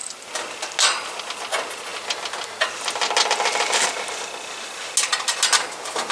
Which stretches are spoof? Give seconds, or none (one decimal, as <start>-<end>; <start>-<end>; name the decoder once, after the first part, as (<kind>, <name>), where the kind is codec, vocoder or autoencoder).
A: none